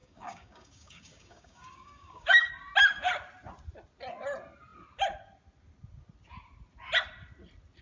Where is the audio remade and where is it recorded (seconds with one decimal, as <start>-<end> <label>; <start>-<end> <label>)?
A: 0.0-2.5 remade; 2.5-7.8 recorded

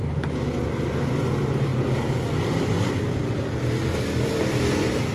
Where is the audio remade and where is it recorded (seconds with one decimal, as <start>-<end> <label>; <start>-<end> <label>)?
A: 0.0-5.1 recorded

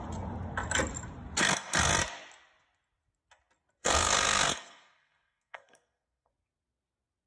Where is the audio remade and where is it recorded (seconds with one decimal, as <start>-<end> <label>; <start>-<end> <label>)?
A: 0.0-1.4 recorded; 1.4-1.9 remade; 1.9-3.8 recorded; 3.8-6.3 remade; 6.3-7.3 recorded